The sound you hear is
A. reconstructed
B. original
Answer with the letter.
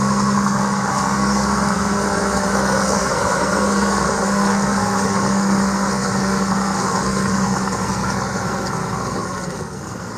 A